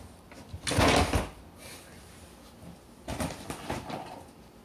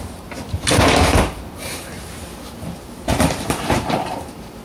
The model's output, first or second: second